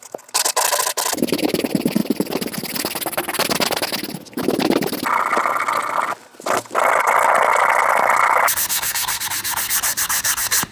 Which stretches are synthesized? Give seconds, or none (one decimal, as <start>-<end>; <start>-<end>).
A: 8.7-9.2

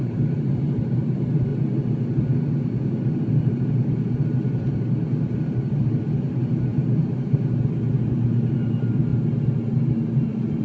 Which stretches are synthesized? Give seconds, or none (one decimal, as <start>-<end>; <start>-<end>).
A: 0.0-1.5; 3.4-10.6

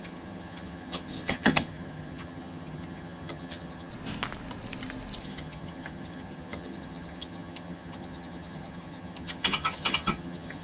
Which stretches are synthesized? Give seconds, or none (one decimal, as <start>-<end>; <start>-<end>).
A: 0.0-3.9; 5.2-10.6